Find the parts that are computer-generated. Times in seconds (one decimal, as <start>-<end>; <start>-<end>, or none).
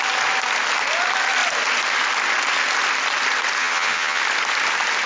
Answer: 3.6-4.2